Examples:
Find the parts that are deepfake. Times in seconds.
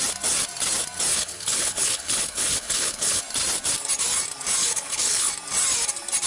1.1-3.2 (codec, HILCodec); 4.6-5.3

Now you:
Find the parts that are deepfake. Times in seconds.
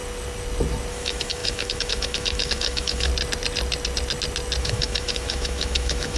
0.9-3.1 (autoencoder, DAC-VAE); 4.6-6.2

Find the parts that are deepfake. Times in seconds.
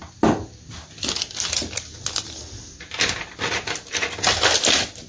none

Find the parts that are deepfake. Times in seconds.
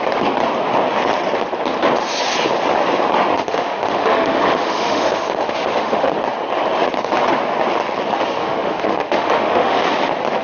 3.3-6.1 (autoencoder, DAC-VAE); 8.4-9.8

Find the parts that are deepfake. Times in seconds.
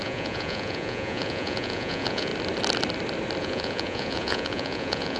0.0-2.3 (vocoder, Vocos); 3.4-5.2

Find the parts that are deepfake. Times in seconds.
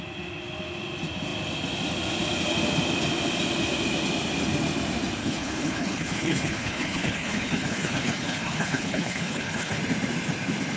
5.2-9.8 (codec, HILCodec)